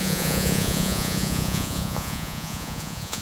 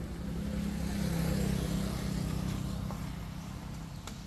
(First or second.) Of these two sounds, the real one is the second